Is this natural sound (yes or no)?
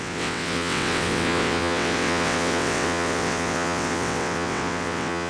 no